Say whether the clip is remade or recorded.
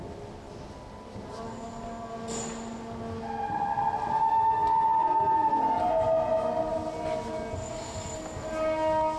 recorded